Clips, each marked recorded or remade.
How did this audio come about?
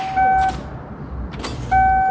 recorded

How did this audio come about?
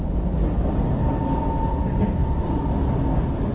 recorded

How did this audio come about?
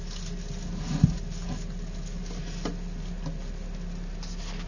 recorded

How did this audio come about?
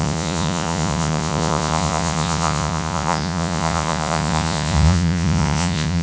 remade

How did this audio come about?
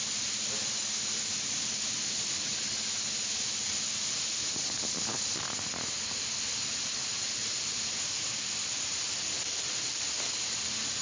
recorded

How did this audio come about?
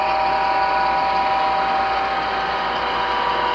recorded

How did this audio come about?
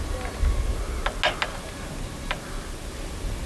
recorded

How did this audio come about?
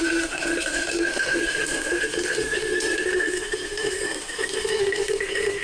remade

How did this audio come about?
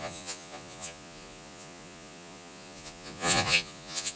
remade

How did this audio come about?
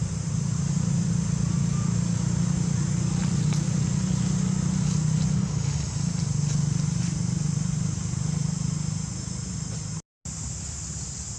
recorded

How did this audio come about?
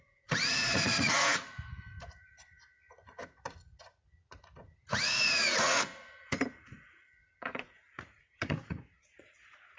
remade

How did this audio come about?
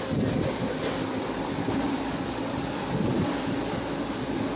recorded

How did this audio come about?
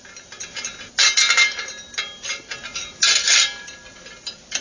recorded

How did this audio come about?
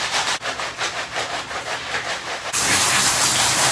remade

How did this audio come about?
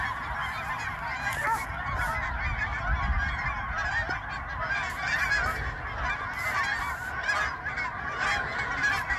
recorded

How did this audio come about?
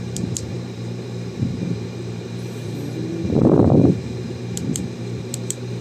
remade